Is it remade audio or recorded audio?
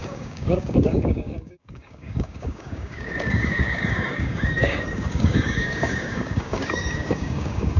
remade